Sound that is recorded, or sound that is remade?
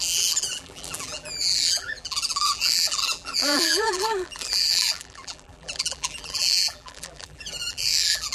remade